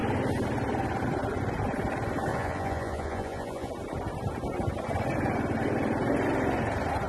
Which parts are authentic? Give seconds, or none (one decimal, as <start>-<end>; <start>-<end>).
0.0-2.3; 3.7-7.1